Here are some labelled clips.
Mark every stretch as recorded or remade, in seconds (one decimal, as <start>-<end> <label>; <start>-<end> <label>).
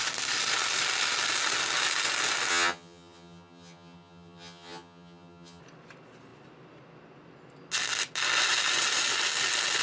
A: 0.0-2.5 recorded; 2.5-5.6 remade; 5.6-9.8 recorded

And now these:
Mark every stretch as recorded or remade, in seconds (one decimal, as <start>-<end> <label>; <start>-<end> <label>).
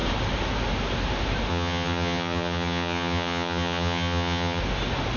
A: 0.0-1.5 recorded; 1.5-4.6 remade; 4.6-5.2 recorded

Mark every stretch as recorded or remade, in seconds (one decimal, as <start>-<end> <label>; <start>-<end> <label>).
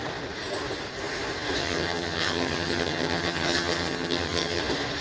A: 0.0-1.6 recorded; 1.6-4.6 remade; 4.6-5.0 recorded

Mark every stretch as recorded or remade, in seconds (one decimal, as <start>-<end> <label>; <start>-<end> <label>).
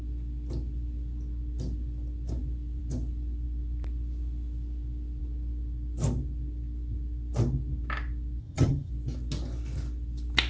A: 0.0-8.4 recorded; 8.4-8.9 remade; 8.9-10.5 recorded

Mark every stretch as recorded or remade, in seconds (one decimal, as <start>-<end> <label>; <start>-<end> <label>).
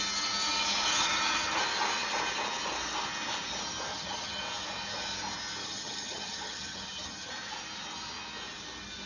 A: 0.0-0.9 recorded; 0.9-1.6 remade; 1.6-3.9 recorded; 3.9-4.4 remade; 4.4-5.6 recorded; 5.6-7.3 remade; 7.3-9.1 recorded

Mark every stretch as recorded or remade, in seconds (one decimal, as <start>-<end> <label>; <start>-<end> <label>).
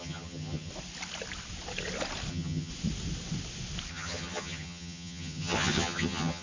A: 0.0-0.7 remade; 0.7-2.3 recorded; 2.3-2.7 remade; 2.7-3.9 recorded; 3.9-6.4 remade